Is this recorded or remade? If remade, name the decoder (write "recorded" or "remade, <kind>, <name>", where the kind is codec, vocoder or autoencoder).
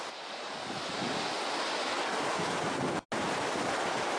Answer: recorded